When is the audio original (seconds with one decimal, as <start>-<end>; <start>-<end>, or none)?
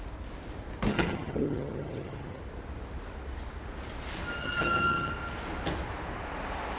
0.0-0.9; 2.4-4.4; 5.1-6.8